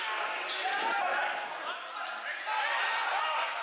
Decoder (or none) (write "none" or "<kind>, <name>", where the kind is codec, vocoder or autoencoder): none